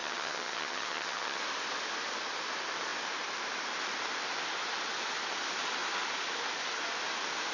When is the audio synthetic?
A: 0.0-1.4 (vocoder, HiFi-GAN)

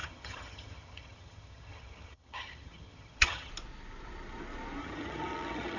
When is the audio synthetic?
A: 0.0-3.5 (vocoder, HiFi-GAN); 4.8-5.8

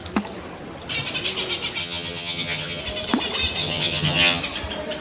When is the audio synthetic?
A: 1.8-2.8 (vocoder, HiFi-GAN); 3.6-4.4

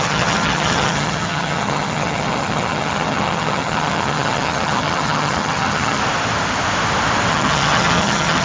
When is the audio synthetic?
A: 0.0-6.0 (vocoder, HiFi-GAN); 7.3-8.4

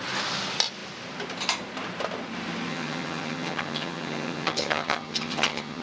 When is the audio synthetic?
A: 2.7-5.8 (vocoder, HiFi-GAN)